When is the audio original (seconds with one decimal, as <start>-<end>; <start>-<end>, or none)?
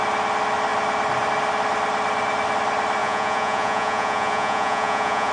0.0-3.0